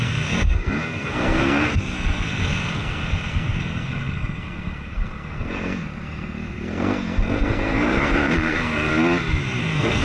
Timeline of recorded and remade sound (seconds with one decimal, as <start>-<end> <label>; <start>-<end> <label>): 0.0-8.9 remade; 8.9-9.6 recorded; 9.6-10.0 remade